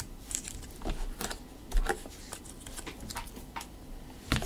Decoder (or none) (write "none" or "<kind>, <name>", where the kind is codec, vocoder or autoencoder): none